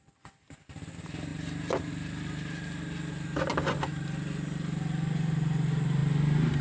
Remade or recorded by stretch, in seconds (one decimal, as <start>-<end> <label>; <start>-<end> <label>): 0.0-1.3 recorded; 1.3-1.9 remade; 1.9-6.6 recorded